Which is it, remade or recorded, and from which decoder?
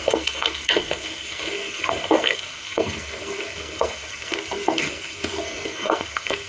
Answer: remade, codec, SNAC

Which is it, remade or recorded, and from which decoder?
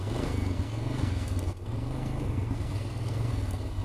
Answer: remade, codec, SNAC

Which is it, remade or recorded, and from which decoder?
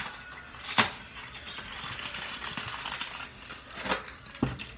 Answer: recorded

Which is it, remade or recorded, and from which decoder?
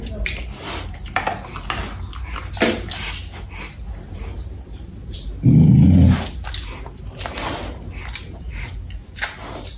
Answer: recorded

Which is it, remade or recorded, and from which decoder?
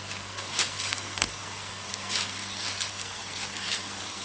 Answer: remade, codec, SNAC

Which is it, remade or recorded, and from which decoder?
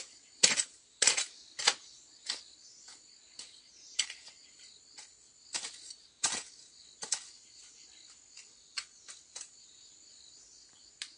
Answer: recorded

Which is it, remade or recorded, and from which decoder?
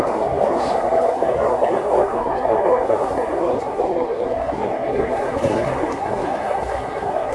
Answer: remade, codec, SNAC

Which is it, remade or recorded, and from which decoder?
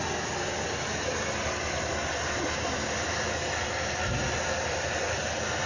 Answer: recorded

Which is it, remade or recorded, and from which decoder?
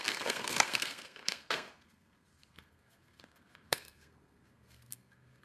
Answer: remade, codec, SNAC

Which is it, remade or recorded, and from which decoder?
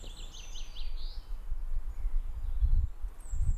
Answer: recorded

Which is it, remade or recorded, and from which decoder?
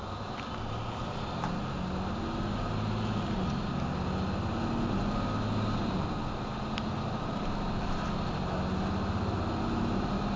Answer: recorded